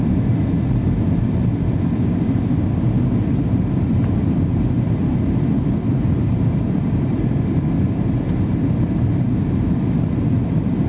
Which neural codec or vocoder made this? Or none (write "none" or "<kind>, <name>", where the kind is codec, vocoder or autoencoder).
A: vocoder, BigVGAN v2